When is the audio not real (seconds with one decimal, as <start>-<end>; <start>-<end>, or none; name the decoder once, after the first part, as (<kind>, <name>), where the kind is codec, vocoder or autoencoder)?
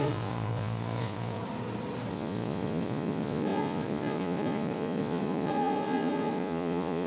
0.0-1.4 (vocoder, Vocos); 2.1-7.1